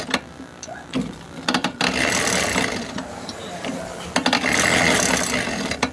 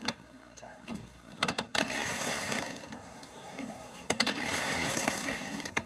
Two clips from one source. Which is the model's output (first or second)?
second